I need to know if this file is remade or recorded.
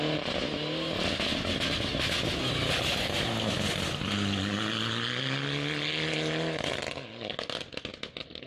recorded